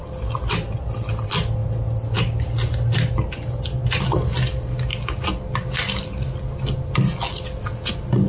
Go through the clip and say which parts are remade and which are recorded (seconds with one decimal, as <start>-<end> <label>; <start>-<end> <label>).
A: 0.0-8.3 recorded